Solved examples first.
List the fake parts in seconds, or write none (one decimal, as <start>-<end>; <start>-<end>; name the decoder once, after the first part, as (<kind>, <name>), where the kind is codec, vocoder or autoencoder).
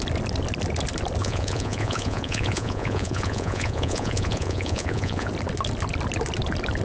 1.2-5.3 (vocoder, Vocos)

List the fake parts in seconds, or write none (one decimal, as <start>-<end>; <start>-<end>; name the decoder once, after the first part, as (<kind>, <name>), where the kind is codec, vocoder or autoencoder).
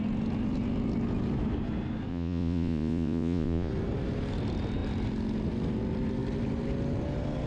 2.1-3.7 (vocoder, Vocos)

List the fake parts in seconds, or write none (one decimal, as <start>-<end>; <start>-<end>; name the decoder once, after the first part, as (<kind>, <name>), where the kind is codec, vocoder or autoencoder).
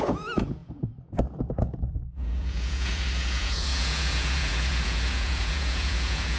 0.0-6.4 (vocoder, Vocos)